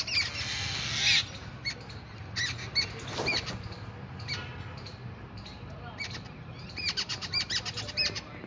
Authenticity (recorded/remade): recorded